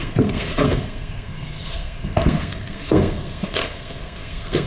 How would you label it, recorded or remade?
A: remade